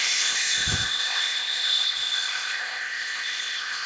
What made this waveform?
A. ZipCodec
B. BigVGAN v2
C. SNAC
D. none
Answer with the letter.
A